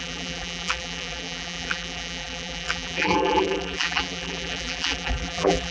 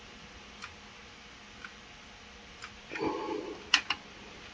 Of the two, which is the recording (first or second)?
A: second